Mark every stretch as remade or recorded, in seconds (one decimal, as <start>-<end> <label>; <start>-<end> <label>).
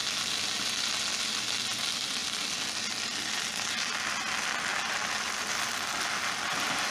0.0-6.9 recorded